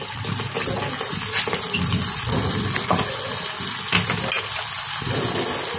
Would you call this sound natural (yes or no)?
yes